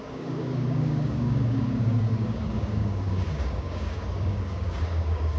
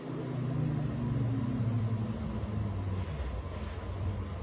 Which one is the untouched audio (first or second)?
second